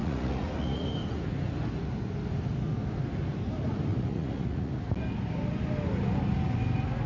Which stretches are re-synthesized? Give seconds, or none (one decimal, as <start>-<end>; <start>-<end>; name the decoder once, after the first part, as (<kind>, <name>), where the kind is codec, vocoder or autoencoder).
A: 0.0-0.9 (vocoder, Vocos); 3.9-4.8